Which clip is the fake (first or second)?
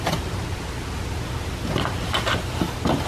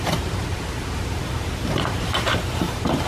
second